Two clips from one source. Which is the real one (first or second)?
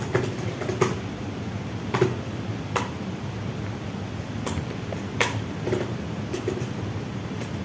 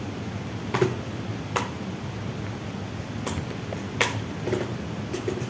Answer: second